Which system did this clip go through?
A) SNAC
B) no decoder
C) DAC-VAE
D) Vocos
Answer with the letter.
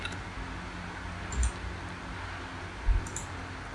B